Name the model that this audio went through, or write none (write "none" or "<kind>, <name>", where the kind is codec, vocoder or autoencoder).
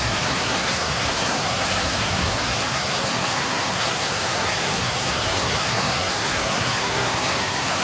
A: codec, SNAC